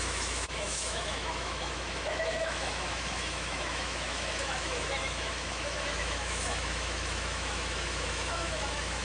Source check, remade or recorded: remade